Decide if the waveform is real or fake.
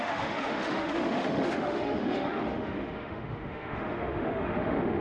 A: fake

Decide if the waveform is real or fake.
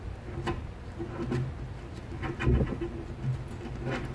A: real